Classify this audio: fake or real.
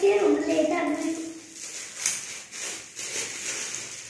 real